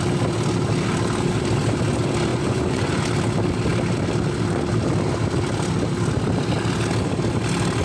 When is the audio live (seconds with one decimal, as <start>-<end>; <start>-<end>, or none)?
0.0-2.3; 3.0-7.8